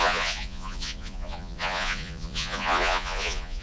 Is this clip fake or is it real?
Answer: fake